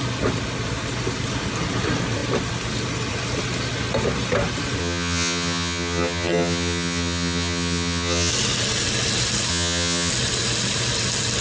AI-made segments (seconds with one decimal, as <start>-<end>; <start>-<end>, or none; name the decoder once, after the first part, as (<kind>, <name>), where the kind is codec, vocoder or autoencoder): 4.8-8.3 (vocoder, HiFi-GAN); 9.5-10.1